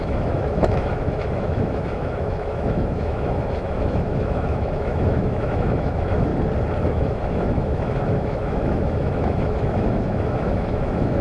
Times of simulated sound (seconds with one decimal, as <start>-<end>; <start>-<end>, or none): 0.0-6.3; 6.9-11.2